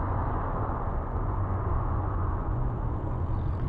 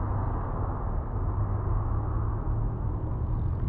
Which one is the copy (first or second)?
first